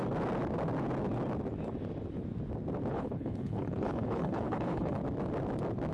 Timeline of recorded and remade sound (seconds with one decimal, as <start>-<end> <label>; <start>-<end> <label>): 0.0-2.9 recorded; 2.9-5.0 remade; 5.0-5.9 recorded